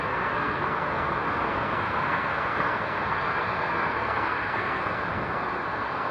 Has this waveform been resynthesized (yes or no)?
yes